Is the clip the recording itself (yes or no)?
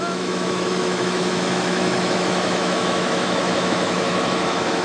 no